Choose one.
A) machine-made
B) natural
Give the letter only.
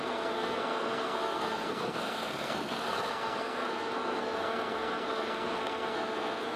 A